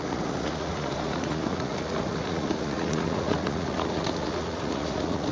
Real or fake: fake